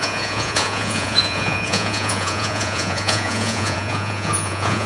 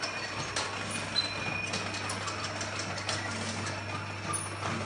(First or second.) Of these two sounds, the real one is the second